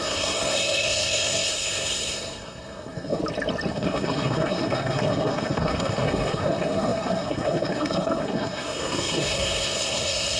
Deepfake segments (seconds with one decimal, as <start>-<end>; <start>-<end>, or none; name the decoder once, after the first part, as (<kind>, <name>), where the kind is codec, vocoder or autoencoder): 0.0-3.2 (codec, SNAC); 3.7-10.4